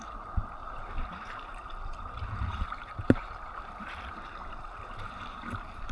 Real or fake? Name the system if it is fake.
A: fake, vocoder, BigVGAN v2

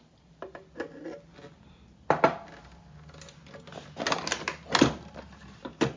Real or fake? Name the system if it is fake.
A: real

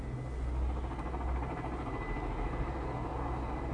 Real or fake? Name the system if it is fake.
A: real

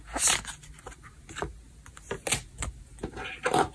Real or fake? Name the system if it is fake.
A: real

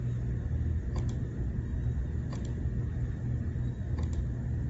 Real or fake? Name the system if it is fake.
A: real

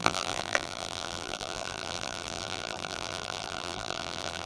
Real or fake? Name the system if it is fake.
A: fake, vocoder, BigVGAN v2